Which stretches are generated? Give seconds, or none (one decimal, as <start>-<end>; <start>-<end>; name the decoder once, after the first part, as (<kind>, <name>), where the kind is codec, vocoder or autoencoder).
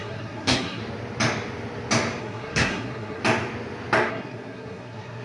0.0-0.8 (codec, SNAC); 2.2-3.2; 4.1-5.2